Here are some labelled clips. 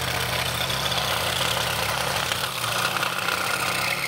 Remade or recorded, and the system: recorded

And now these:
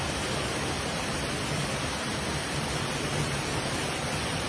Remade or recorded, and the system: recorded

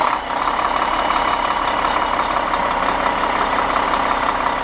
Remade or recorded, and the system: recorded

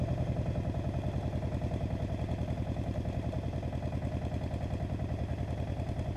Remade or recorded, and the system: recorded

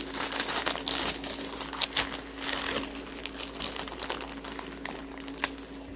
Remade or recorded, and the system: recorded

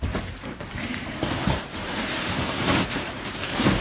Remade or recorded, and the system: remade, vocoder, BigVGAN v2